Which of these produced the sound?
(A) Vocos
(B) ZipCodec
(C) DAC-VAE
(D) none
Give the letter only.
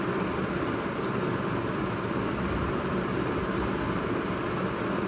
D